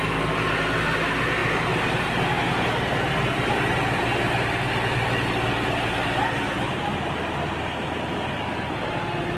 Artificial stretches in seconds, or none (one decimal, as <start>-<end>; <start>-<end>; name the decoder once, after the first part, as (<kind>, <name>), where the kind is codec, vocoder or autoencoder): none